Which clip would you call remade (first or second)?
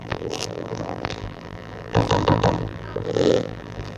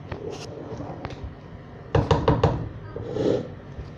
first